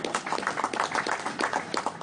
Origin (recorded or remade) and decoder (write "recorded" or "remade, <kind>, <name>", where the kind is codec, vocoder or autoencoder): recorded